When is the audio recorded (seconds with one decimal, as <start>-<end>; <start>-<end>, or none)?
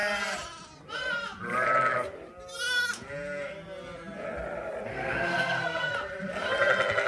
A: 0.0-4.9; 5.9-7.1